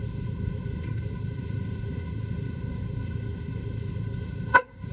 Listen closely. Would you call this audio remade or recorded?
remade